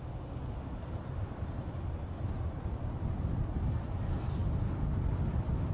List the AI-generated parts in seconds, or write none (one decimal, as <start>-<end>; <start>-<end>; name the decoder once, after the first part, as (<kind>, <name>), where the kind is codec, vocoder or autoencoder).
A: none